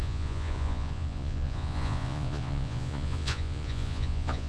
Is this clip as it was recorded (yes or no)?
no